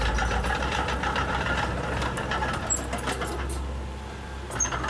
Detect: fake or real real